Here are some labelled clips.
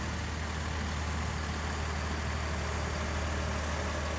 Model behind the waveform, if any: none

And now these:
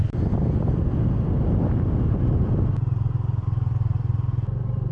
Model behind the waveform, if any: none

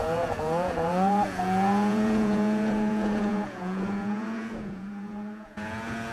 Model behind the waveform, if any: vocoder, Vocos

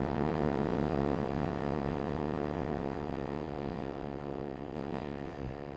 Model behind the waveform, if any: vocoder, WaveNeXt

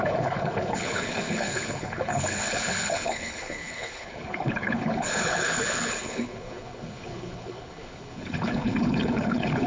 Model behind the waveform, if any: codec, HILCodec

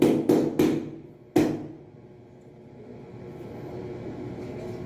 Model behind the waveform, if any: none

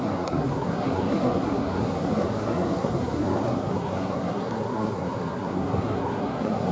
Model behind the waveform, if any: codec, SNAC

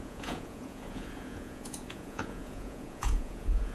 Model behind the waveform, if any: vocoder, Vocos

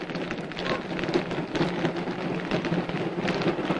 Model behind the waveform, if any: none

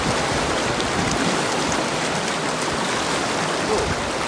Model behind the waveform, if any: none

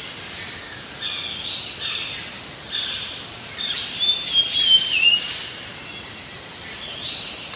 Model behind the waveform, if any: none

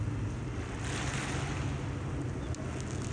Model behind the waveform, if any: none